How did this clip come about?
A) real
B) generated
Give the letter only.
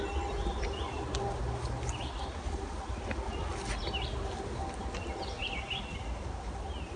A